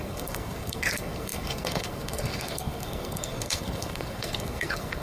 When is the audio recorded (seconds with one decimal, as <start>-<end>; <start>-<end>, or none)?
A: none